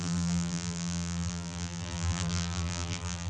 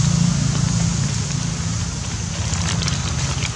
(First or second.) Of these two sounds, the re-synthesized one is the first